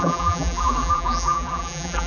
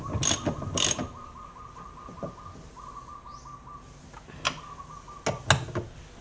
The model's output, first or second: first